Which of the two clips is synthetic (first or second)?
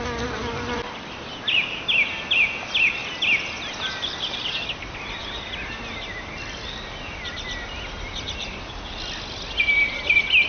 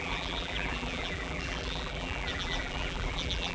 second